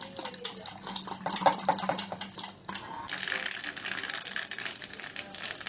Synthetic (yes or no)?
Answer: no